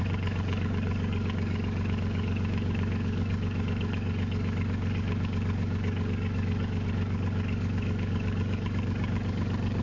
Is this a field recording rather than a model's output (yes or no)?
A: no